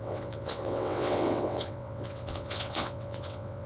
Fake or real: fake